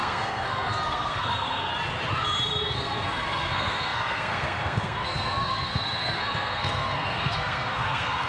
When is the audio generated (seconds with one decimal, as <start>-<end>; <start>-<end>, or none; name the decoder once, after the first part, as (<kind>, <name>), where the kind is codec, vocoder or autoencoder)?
0.0-1.7 (codec, SNAC); 2.7-8.3